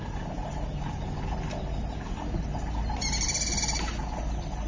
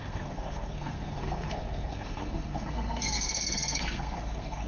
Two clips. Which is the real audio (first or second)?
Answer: first